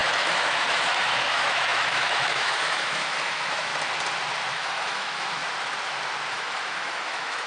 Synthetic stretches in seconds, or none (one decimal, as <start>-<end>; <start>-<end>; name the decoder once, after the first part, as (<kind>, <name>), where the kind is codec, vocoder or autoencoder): 0.0-3.7 (autoencoder, DAC-VAE); 4.5-5.4; 6.3-7.5